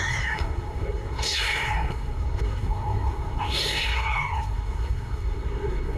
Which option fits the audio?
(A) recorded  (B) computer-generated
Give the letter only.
B